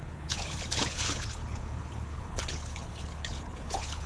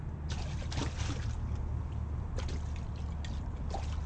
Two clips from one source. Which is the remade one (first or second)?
first